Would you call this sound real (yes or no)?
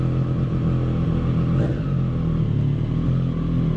yes